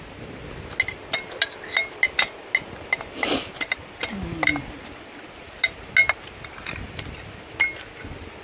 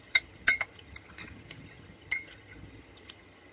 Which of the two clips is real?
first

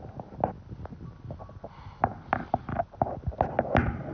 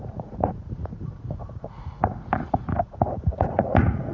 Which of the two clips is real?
first